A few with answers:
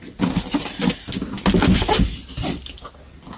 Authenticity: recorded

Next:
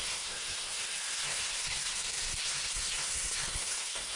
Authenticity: remade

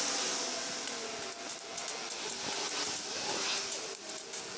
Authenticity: recorded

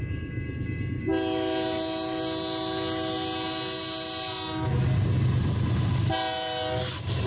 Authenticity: recorded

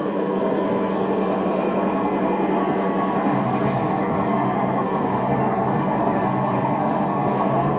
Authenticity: remade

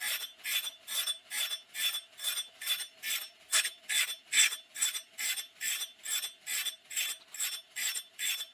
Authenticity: recorded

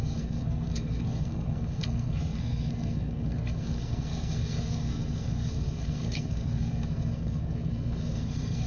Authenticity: remade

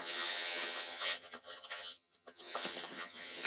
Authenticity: remade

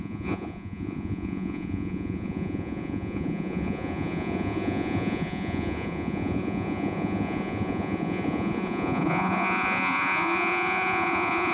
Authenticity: remade